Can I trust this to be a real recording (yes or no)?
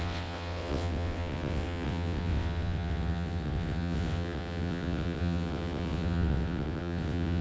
no